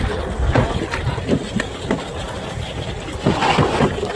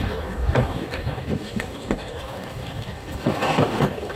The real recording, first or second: first